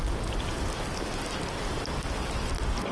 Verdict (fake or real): real